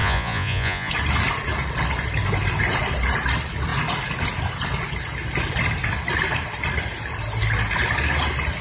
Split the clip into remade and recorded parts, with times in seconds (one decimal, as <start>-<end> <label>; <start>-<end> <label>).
0.0-0.9 remade; 0.9-8.6 recorded